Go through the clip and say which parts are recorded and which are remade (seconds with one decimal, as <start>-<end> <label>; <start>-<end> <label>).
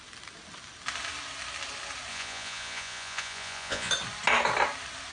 0.0-2.1 recorded; 2.1-3.9 remade; 3.9-5.1 recorded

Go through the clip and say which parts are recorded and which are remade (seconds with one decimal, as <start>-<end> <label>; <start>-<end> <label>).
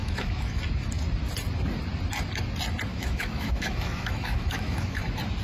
0.0-0.6 remade; 0.6-2.9 recorded; 2.9-5.0 remade; 5.0-5.4 recorded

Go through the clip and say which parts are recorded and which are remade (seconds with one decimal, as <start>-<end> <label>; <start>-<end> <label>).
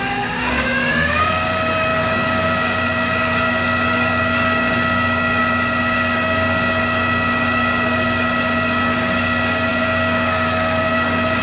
0.0-11.4 remade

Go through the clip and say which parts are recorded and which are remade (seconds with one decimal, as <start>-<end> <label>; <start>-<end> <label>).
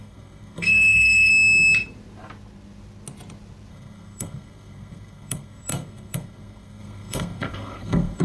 0.0-1.3 remade; 1.3-3.7 recorded; 3.7-8.2 remade